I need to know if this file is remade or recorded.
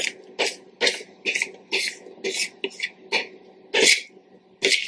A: recorded